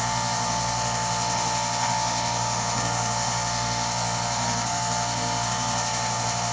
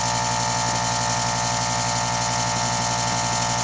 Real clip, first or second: second